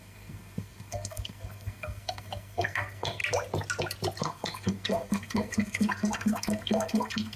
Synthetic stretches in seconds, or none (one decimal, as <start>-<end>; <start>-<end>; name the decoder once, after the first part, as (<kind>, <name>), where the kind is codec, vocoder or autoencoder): 0.0-3.2 (codec, SNAC); 4.2-7.4